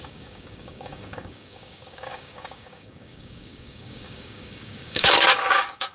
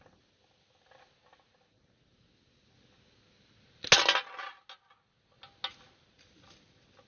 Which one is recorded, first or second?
second